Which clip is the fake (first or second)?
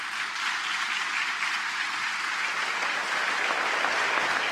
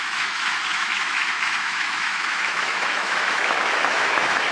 second